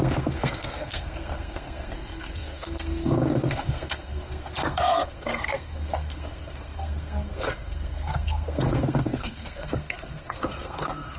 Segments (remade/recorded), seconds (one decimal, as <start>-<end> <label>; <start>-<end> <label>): 0.0-11.2 remade